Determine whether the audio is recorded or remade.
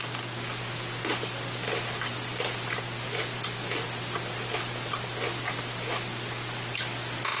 recorded